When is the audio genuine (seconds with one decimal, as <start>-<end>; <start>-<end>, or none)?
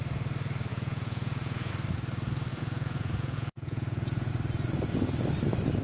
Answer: 0.0-0.7; 1.7-2.5; 4.3-5.8